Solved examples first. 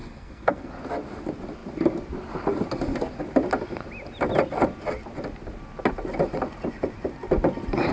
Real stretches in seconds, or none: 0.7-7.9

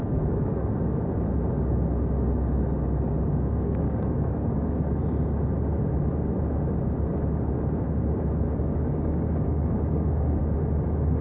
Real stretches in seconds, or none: 0.5-3.3; 5.0-8.6; 10.4-11.2

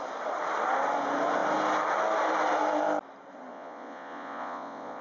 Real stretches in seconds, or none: 0.0-3.5